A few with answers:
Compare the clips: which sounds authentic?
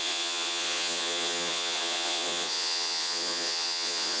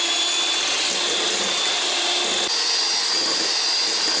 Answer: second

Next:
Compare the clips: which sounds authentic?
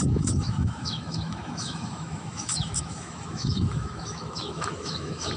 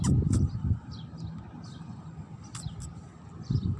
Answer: second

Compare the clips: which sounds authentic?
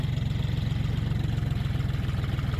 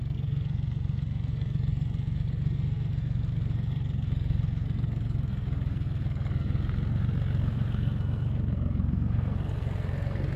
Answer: first